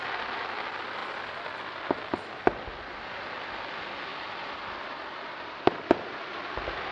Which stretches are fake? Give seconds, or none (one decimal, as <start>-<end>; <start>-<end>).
1.0-2.4; 4.1-6.2